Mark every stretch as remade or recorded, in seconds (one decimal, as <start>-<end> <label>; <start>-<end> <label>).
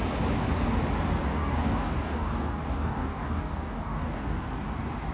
0.0-1.3 recorded; 1.3-4.4 remade; 4.4-5.1 recorded